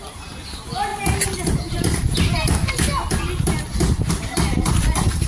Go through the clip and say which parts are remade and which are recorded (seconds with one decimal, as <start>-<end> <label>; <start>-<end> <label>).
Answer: 0.0-5.3 recorded

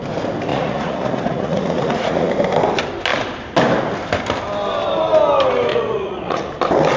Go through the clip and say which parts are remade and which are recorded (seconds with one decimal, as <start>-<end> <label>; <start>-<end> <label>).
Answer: 0.0-0.5 recorded; 0.5-2.3 remade; 2.3-5.7 recorded; 5.7-6.5 remade; 6.5-7.0 recorded

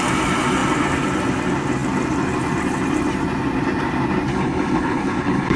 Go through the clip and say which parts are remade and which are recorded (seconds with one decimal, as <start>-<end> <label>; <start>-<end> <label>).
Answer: 0.0-4.3 recorded; 4.3-5.6 remade